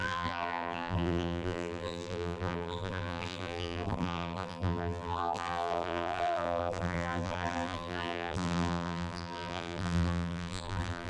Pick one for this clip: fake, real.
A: fake